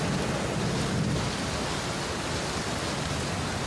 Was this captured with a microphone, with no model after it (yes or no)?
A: yes